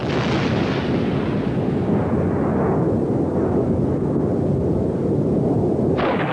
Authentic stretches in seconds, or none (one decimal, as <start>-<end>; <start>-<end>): 0.0-6.3